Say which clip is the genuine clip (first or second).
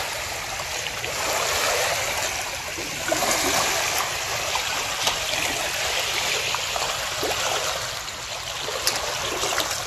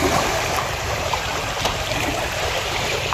first